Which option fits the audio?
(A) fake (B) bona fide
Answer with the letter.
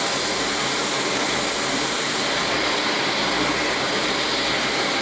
B